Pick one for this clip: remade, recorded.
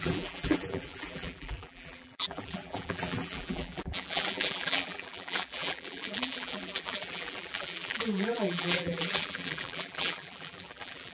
remade